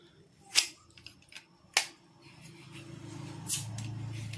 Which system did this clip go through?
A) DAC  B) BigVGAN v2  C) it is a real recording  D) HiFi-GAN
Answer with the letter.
C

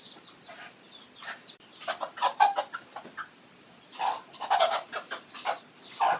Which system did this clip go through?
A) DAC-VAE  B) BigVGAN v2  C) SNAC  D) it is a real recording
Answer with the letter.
B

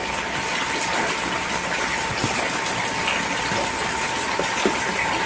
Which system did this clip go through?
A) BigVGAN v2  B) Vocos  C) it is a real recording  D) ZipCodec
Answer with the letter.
C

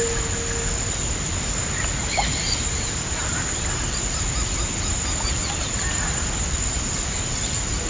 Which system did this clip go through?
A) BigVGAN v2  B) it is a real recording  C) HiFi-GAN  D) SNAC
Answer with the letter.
B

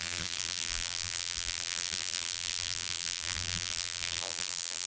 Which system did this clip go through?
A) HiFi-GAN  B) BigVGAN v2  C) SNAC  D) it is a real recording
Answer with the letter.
B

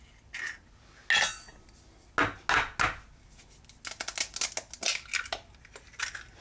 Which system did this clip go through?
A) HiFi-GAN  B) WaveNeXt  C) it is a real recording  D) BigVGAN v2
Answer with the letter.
C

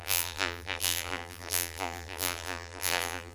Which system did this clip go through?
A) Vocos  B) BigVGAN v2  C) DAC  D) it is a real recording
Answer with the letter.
B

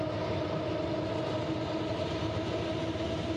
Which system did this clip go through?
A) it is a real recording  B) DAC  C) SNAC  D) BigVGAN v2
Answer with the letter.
A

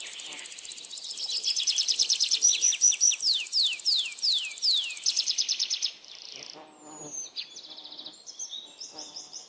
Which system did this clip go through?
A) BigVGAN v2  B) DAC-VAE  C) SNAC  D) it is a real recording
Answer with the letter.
A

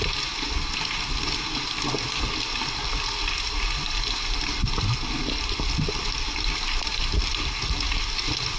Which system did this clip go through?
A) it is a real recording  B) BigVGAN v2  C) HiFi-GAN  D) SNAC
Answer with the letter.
A